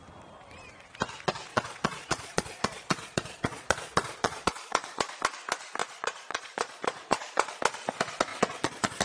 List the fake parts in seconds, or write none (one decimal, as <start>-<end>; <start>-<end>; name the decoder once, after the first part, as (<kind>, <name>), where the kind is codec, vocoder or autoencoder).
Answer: 1.5-5.1 (vocoder, Vocos); 5.8-7.6; 8.3-9.0